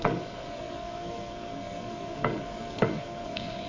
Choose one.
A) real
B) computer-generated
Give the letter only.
B